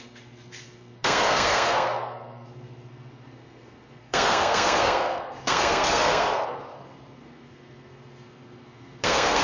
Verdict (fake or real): fake